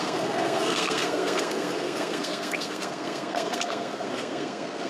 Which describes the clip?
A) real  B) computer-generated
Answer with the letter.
B